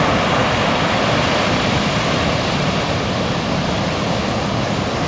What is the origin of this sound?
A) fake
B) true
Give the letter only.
B